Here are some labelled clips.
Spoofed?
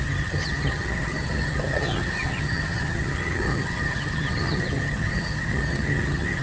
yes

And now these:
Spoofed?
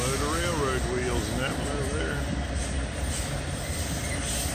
no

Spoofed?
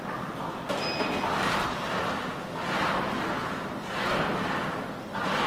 no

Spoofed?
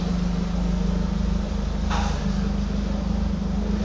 no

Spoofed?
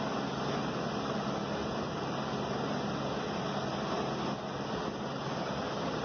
no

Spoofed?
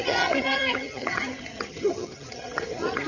yes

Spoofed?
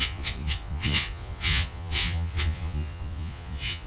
yes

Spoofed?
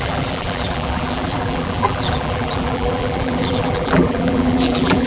yes